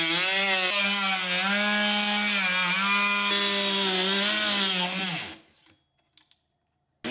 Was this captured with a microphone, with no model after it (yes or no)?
yes